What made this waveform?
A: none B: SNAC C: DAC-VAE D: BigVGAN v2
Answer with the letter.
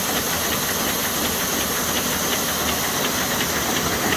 A